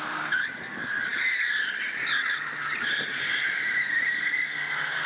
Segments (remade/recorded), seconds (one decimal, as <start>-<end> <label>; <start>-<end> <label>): 0.0-5.1 recorded